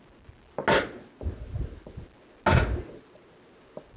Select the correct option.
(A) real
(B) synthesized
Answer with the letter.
A